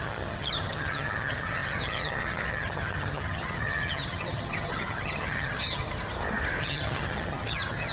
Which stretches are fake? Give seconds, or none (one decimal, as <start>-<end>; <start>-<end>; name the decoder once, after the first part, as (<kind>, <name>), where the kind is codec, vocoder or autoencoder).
0.0-5.8 (vocoder, HiFi-GAN); 6.6-7.9